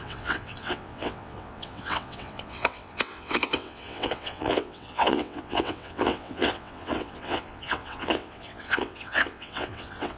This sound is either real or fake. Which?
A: fake